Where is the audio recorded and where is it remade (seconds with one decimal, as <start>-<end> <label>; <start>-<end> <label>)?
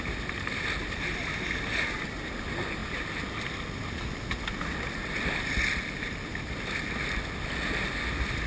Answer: 0.0-8.5 recorded